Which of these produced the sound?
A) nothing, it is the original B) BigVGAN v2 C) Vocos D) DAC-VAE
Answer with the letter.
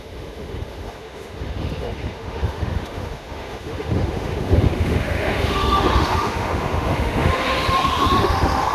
D